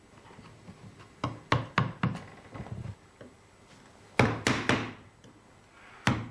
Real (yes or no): yes